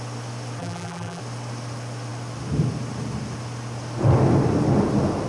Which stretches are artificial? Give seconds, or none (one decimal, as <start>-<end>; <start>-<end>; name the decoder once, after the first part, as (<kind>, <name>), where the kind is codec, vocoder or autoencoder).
0.6-1.2 (vocoder, BigVGAN v2)